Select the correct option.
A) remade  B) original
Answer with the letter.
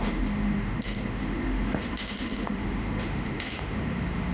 A